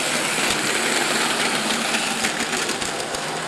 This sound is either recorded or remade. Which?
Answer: recorded